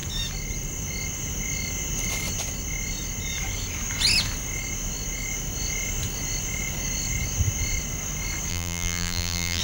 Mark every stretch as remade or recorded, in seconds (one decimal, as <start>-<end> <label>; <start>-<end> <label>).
0.0-8.5 recorded; 8.5-9.6 remade